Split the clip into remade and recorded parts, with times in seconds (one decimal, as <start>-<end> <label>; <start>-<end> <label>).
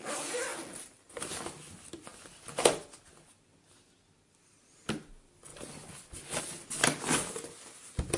0.0-5.5 recorded; 5.5-6.4 remade; 6.4-8.2 recorded